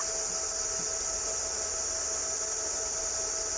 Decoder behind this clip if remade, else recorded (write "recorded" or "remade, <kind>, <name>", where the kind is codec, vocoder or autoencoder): recorded